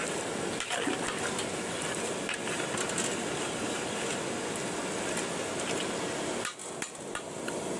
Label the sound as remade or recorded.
recorded